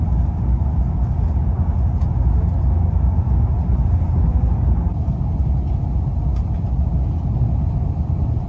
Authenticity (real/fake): real